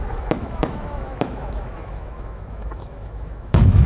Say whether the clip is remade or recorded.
remade